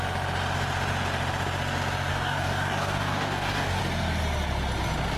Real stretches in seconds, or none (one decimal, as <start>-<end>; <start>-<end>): 0.0-2.1; 3.8-5.2